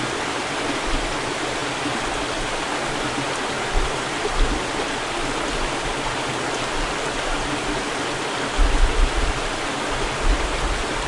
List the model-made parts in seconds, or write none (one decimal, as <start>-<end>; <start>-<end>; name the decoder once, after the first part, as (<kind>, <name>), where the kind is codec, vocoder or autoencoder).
none